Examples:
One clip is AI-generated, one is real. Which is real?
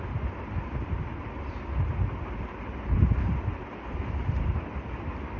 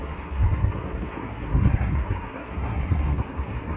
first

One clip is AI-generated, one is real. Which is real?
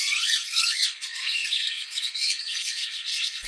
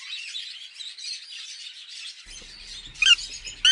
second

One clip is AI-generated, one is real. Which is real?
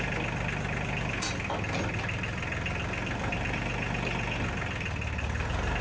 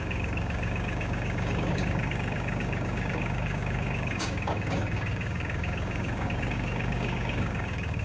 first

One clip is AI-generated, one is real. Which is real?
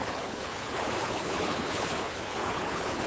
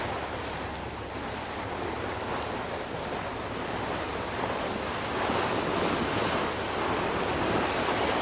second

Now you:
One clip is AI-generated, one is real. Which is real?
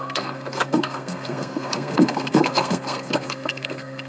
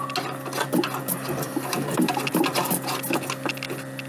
second